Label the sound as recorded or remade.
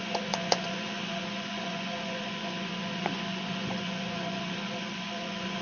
remade